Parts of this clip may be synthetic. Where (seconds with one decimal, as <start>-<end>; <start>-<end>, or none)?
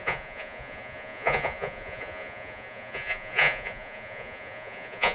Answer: 0.0-5.1